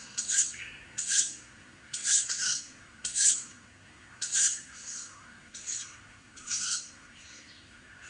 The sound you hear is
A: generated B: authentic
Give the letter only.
A